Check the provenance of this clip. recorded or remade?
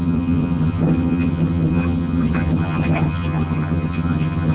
remade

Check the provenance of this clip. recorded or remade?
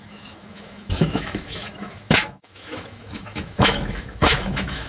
remade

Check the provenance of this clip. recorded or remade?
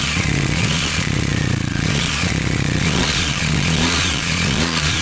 remade